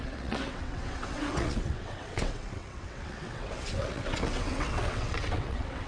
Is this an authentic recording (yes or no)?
no